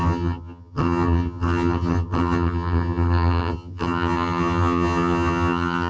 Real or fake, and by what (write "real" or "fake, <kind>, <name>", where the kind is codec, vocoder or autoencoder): fake, vocoder, HiFi-GAN